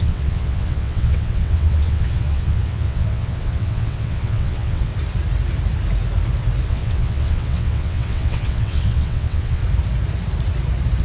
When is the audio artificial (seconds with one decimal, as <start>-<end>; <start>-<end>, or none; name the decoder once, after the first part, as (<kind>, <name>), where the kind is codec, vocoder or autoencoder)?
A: 0.0-4.9 (vocoder, WaveNeXt); 6.7-9.6